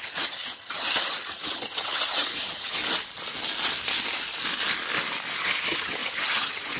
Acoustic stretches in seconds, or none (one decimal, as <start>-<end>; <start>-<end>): 2.8-5.4